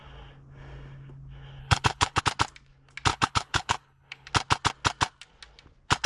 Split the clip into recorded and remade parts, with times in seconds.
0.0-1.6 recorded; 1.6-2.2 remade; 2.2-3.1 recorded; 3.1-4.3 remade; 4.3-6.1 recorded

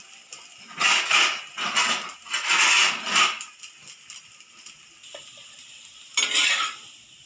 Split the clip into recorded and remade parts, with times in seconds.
0.0-7.3 recorded

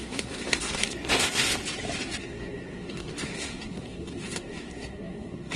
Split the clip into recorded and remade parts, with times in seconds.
0.0-1.5 remade; 1.5-2.2 recorded; 2.2-5.6 remade